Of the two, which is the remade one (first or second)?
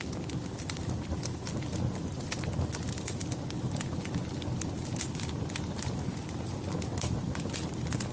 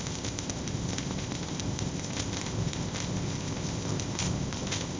second